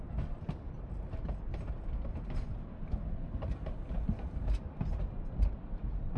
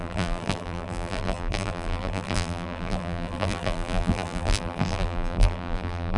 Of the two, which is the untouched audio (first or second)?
first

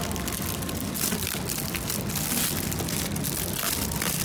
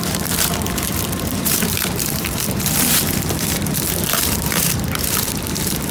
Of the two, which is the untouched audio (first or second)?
first